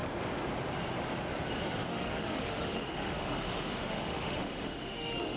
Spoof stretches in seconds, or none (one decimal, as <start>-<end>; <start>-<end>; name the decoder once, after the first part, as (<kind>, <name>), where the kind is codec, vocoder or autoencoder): 1.9-5.4 (autoencoder, DAC-VAE)